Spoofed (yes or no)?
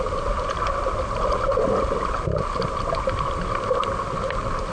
no